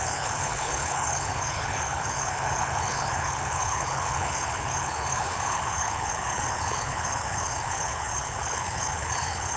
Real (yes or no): no